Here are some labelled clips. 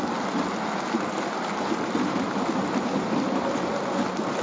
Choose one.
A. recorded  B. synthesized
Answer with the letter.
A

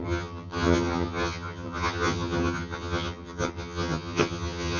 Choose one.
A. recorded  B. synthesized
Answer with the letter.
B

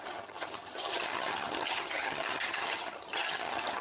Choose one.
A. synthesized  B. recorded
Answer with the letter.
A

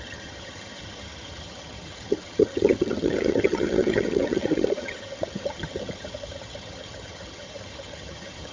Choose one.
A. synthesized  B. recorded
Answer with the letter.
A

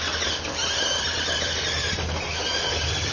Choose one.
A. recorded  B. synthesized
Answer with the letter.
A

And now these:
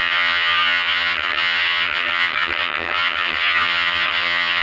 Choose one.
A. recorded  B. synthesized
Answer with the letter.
B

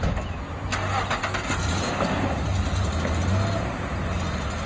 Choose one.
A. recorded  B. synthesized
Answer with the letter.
A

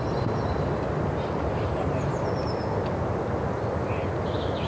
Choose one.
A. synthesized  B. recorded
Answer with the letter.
B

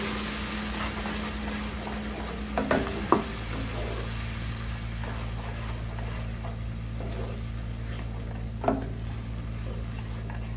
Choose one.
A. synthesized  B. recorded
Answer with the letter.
B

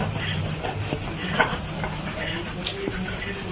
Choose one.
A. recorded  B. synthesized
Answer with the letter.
A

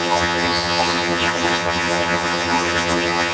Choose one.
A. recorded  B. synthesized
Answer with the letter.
B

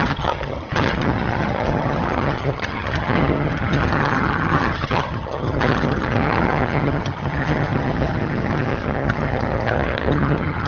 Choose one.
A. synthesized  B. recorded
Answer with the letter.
A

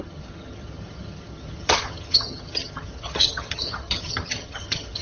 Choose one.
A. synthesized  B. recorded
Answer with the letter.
A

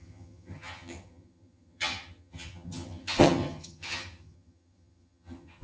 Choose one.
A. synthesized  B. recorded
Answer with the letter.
A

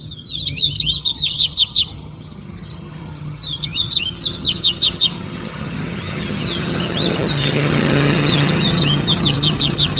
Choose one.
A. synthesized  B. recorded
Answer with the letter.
A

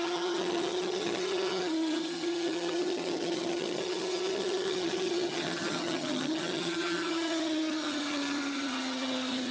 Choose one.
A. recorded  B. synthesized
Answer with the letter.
B